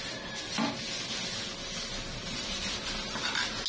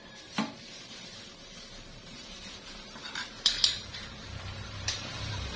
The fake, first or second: second